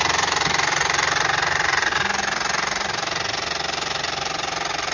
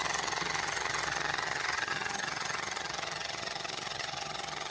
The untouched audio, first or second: first